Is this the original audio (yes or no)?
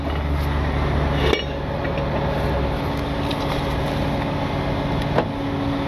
yes